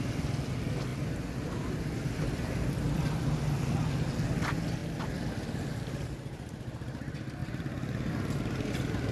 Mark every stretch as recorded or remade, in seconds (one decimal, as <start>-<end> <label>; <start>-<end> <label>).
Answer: 0.0-9.1 recorded

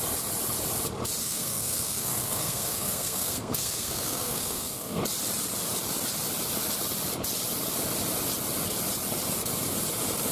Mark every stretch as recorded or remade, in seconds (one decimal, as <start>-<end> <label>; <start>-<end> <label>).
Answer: 0.0-1.2 recorded; 1.2-5.0 remade; 5.0-10.3 recorded